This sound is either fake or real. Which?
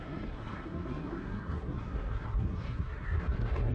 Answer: fake